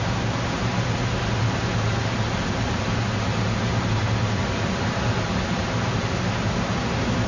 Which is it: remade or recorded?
recorded